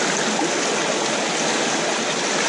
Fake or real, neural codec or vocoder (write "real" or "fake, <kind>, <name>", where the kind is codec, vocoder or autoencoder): real